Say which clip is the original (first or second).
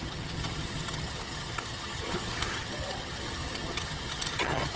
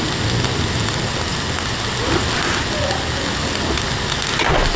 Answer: second